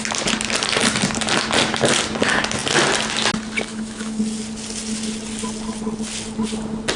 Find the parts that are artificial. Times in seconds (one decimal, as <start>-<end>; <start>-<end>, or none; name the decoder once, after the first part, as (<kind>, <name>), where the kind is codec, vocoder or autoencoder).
3.7-4.2 (autoencoder, DAC-VAE)